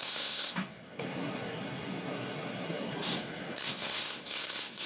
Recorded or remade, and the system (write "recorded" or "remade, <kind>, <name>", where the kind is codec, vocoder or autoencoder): remade, codec, SNAC